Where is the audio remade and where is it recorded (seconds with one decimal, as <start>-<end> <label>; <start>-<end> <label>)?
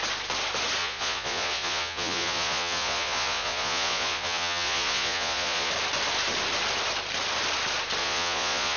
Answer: 0.0-0.8 recorded; 0.8-5.7 remade; 5.7-8.0 recorded; 8.0-8.8 remade